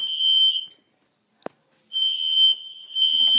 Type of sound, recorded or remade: recorded